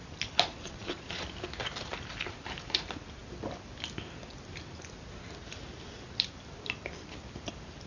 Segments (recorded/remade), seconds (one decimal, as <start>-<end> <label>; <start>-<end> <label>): 0.0-0.5 recorded; 0.5-1.1 remade; 1.1-7.9 recorded

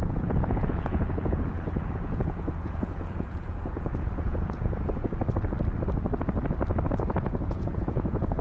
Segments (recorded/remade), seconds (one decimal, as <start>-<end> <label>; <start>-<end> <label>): 0.0-5.2 remade; 5.2-7.2 recorded; 7.2-8.4 remade

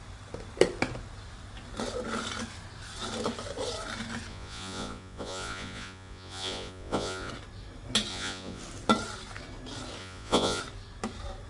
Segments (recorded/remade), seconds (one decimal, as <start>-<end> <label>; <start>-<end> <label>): 0.0-4.3 recorded; 4.3-7.3 remade; 7.3-8.1 recorded; 8.1-8.6 remade; 8.6-10.0 recorded; 10.0-10.6 remade; 10.6-11.5 recorded

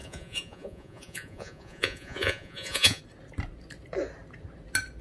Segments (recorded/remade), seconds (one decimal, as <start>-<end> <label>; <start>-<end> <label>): 0.0-3.0 remade; 3.0-5.0 recorded

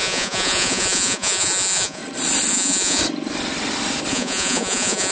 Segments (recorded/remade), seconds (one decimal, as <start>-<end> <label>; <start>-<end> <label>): 0.0-2.0 remade; 2.0-2.5 recorded; 2.5-3.0 remade; 3.0-4.1 recorded; 4.1-5.1 remade